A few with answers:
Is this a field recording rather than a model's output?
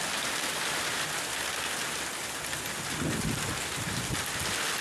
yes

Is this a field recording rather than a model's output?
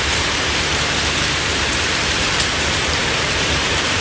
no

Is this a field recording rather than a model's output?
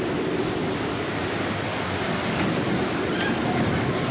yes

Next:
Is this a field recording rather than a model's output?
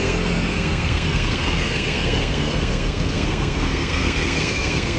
no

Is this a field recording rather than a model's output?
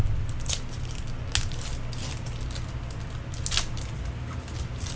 yes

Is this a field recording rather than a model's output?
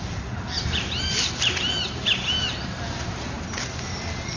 yes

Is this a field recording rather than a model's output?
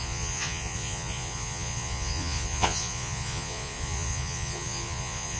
no